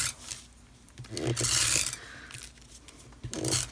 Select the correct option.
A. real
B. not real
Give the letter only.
A